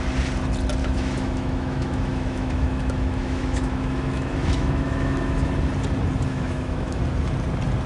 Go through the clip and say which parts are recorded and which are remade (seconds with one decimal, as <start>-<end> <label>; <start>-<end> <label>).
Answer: 0.0-0.8 recorded; 0.8-5.5 remade; 5.5-6.3 recorded; 6.3-7.0 remade; 7.0-7.9 recorded